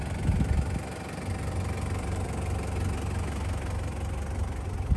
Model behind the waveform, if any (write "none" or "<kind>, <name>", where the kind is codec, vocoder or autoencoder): none